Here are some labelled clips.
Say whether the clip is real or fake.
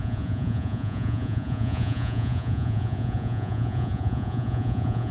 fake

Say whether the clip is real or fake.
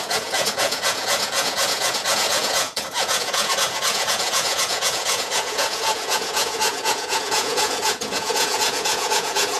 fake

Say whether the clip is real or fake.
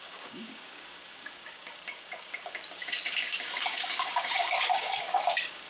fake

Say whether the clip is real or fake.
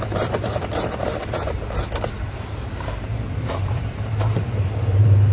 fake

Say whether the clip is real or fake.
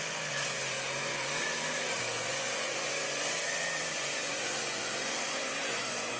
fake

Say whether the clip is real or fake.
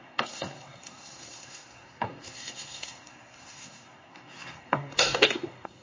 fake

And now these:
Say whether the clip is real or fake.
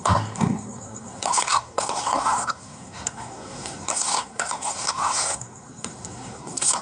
fake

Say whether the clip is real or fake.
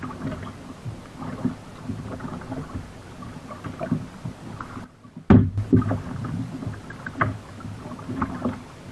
real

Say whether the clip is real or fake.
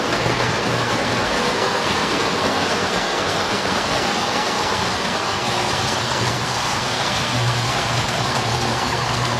fake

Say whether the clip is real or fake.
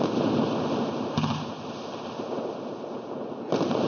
real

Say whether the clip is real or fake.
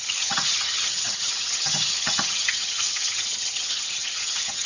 fake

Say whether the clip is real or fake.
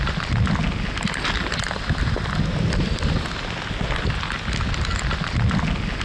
real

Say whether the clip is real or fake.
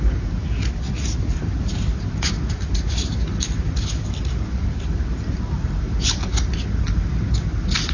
real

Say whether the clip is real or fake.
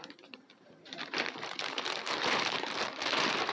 fake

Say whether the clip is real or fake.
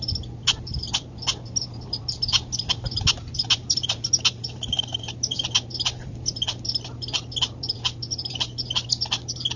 real